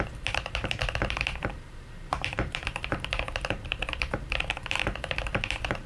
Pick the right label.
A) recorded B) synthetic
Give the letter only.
B